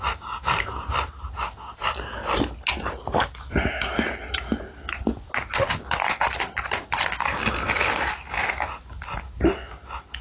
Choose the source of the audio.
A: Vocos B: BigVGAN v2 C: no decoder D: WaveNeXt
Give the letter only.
C